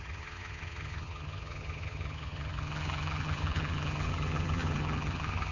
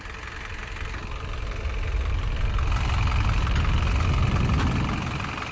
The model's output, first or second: first